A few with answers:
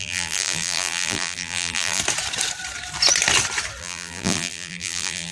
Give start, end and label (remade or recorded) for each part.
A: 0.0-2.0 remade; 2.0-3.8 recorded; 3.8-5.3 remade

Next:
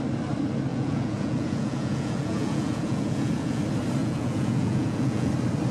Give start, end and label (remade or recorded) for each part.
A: 0.0-0.7 recorded; 0.7-3.6 remade; 3.6-4.0 recorded; 4.0-5.3 remade; 5.3-5.7 recorded

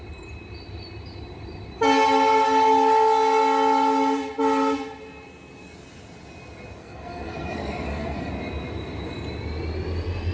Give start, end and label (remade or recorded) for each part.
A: 0.0-6.8 recorded; 6.8-8.3 remade; 8.3-10.3 recorded

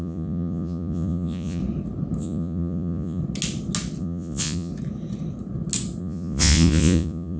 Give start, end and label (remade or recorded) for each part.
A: 0.0-1.6 remade; 1.6-2.2 recorded; 2.2-3.2 remade; 3.2-4.0 recorded; 4.0-4.7 remade; 4.7-6.0 recorded; 6.0-7.4 remade